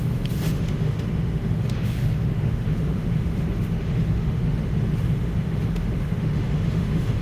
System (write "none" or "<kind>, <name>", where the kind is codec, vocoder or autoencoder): autoencoder, DAC-VAE